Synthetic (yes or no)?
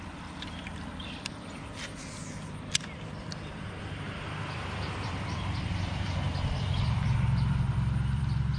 yes